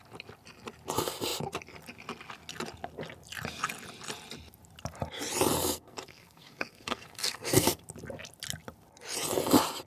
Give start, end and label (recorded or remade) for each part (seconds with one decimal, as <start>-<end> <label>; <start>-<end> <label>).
0.0-5.6 recorded; 5.6-7.8 remade; 7.8-9.9 recorded